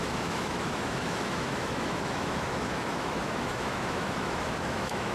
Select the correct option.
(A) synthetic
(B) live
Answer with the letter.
A